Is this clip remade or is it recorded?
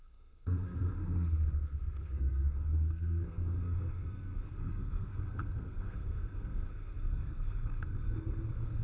remade